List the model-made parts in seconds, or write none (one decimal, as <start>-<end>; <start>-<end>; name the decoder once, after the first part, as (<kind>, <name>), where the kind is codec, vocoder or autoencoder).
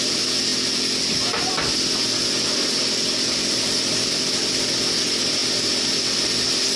none